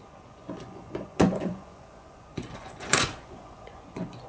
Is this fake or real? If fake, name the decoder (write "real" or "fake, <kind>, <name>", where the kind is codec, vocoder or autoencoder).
fake, vocoder, Vocos